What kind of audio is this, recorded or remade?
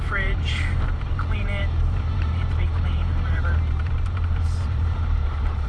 remade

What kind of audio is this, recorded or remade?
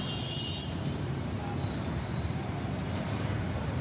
remade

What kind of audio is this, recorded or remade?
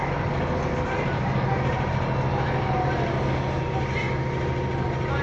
recorded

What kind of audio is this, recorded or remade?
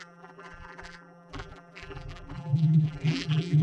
remade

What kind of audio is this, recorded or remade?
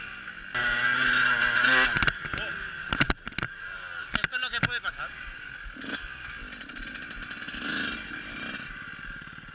recorded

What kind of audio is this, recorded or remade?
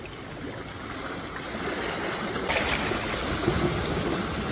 recorded